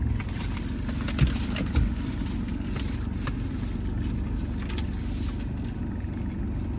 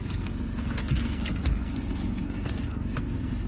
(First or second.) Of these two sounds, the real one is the first